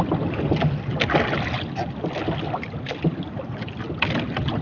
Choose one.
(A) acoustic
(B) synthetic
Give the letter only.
A